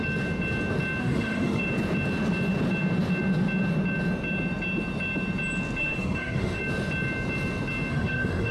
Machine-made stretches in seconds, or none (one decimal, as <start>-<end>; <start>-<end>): 1.0-1.6; 5.8-6.6; 7.9-8.5